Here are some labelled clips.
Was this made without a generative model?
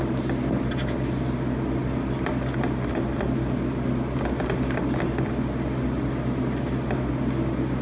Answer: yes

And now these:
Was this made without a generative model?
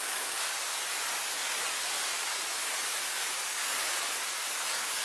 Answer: no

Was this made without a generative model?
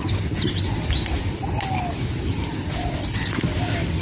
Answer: yes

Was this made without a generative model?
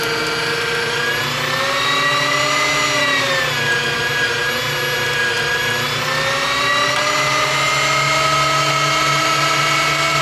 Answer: yes